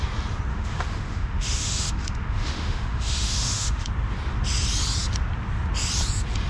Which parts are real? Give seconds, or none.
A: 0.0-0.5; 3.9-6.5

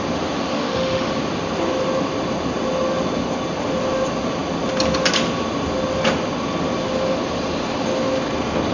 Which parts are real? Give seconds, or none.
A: 0.0-0.5; 1.1-8.7

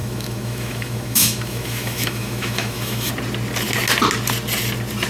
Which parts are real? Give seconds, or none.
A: 3.1-5.1

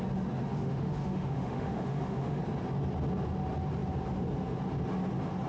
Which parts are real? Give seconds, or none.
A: 0.0-0.5; 2.4-5.5

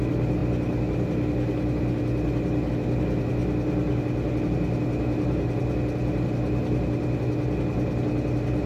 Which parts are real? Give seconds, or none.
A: 0.0-8.7